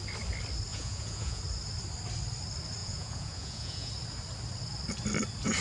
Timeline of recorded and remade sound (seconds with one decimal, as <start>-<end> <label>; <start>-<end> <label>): 0.0-0.7 recorded; 0.7-1.4 remade; 1.4-2.8 recorded; 2.8-3.9 remade; 3.9-5.6 recorded